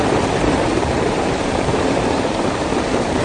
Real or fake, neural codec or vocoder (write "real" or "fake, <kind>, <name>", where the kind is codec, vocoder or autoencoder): fake, vocoder, BigVGAN v2